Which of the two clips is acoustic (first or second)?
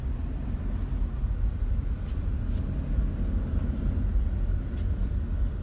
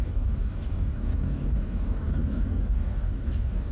first